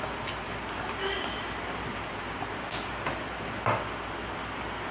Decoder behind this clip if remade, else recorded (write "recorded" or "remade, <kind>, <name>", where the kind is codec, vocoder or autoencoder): recorded